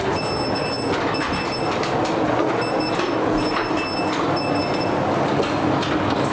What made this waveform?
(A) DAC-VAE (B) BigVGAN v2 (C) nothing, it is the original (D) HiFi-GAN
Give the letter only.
C